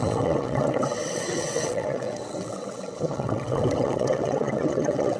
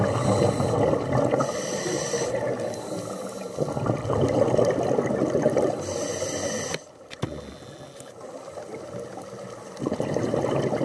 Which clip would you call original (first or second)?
second